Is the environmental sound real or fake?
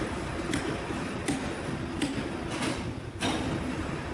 real